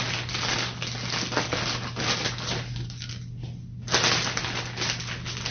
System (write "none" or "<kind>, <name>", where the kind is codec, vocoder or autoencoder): none